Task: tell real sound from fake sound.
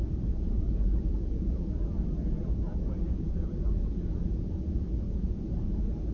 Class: fake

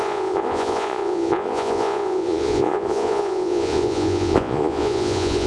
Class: fake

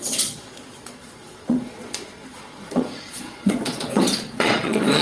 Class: fake